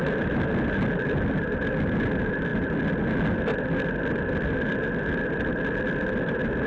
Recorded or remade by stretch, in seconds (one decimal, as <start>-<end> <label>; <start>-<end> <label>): 0.0-6.7 recorded